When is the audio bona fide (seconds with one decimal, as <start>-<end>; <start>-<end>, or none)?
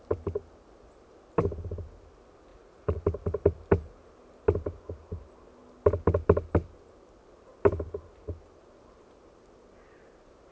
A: 0.0-2.5; 3.0-10.5